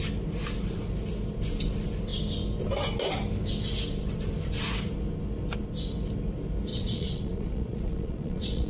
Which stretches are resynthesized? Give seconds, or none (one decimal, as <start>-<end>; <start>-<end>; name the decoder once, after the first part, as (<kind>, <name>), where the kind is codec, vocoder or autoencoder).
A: 6.7-8.7 (vocoder, Vocos)